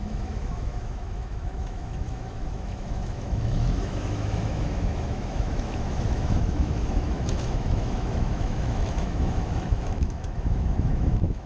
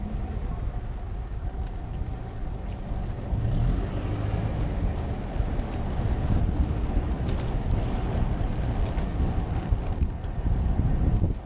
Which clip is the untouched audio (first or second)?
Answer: second